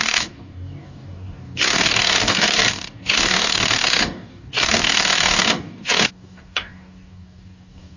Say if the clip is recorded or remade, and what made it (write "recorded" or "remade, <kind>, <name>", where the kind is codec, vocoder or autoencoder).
remade, codec, DAC